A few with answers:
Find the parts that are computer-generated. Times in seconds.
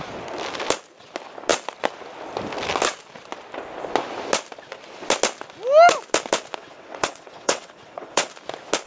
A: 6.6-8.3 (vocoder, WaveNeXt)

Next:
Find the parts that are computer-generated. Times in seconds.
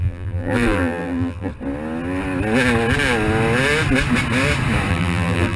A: 0.0-1.5 (vocoder, BigVGAN v2); 4.9-5.6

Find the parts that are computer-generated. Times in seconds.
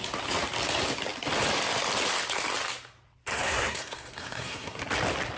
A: 3.3-4.8 (codec, SNAC)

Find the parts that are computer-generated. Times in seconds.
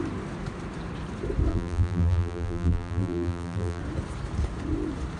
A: 1.5-3.8 (vocoder, BigVGAN v2)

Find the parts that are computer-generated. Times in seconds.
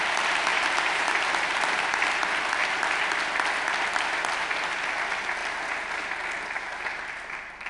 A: 0.5-1.1 (vocoder, BigVGAN v2)